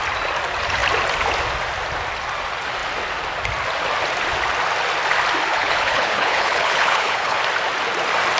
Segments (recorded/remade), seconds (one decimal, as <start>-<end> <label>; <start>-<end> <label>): 0.0-5.5 recorded; 5.5-7.4 remade; 7.4-8.4 recorded